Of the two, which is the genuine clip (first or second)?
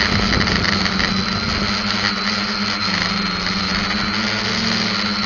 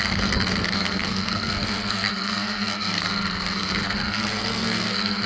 first